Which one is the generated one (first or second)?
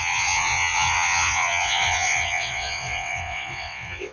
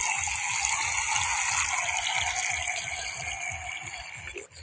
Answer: first